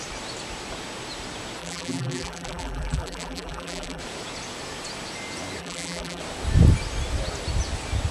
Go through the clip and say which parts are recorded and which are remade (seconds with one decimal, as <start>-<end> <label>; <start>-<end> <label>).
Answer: 0.0-1.6 recorded; 1.6-4.0 remade; 4.0-5.6 recorded; 5.6-6.2 remade; 6.2-8.1 recorded

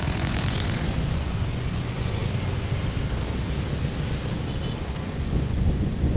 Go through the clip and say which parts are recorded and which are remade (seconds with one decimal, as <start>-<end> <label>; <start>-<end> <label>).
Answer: 0.0-2.2 remade; 2.2-4.9 recorded; 4.9-6.2 remade

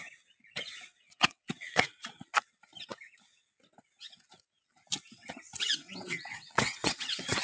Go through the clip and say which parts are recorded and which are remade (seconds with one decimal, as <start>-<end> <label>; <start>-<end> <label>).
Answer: 0.0-0.9 recorded; 0.9-2.0 remade; 2.0-5.6 recorded; 5.6-7.4 remade

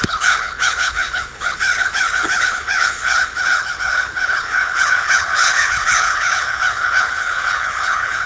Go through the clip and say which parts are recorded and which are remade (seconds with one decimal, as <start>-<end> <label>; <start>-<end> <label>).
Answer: 0.0-8.3 remade

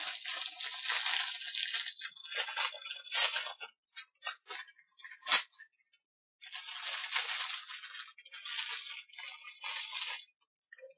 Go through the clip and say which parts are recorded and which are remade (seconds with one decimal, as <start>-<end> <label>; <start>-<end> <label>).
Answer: 0.0-11.0 recorded